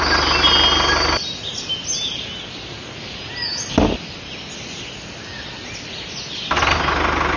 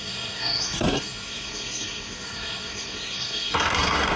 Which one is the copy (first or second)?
second